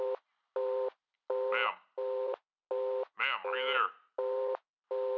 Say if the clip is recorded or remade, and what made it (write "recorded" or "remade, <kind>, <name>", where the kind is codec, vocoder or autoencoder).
recorded